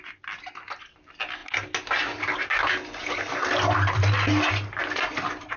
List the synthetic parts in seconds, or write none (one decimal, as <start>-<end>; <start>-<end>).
none